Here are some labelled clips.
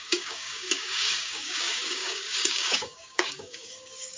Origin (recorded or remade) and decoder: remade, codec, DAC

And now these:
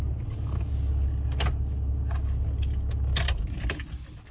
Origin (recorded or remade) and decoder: recorded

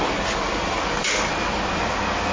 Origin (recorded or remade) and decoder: recorded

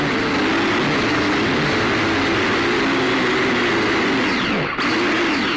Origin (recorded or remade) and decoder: recorded